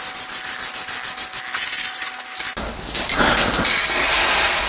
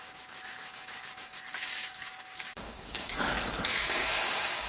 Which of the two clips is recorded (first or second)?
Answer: first